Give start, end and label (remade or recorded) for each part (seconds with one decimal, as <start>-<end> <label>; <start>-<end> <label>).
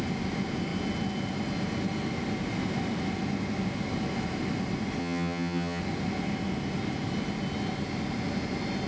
0.0-5.0 recorded; 5.0-5.8 remade; 5.8-8.9 recorded